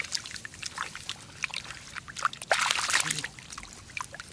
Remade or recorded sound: recorded